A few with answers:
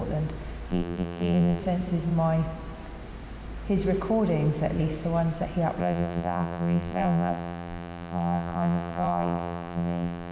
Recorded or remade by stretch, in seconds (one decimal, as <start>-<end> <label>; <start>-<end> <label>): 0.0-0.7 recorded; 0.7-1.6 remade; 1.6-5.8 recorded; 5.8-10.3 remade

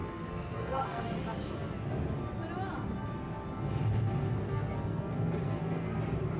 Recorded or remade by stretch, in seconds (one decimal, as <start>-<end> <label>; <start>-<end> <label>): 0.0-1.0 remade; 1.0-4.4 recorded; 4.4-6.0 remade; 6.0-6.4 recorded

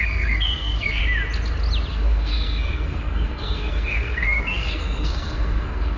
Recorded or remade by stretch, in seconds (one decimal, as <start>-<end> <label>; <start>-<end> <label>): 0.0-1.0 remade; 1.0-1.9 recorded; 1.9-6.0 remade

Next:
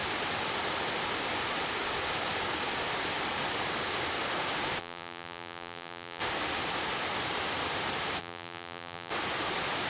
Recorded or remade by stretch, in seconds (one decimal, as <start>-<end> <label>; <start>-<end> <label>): 0.0-4.8 recorded; 4.8-6.2 remade; 6.2-8.2 recorded; 8.2-9.1 remade; 9.1-9.9 recorded

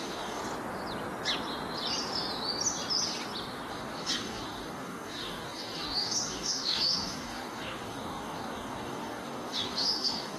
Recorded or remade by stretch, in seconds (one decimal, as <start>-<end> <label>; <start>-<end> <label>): 0.0-0.4 remade; 0.4-3.7 recorded; 3.7-10.4 remade

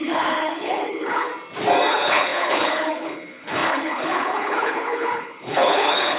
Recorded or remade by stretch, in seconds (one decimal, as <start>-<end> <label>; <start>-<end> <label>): 0.0-1.3 remade; 1.3-1.9 recorded; 1.9-6.2 remade

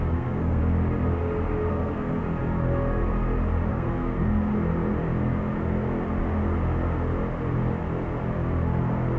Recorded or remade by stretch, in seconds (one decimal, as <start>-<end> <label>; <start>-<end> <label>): 0.0-0.6 remade; 0.6-1.7 recorded; 1.7-2.2 remade; 2.2-3.7 recorded; 3.7-4.5 remade; 4.5-9.2 recorded